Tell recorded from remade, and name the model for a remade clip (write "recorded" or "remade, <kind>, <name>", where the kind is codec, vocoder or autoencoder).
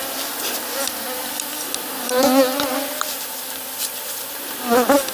recorded